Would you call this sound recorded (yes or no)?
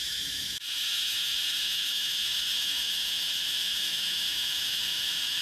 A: no